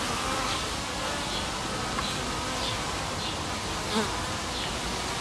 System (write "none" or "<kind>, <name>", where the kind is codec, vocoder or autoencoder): none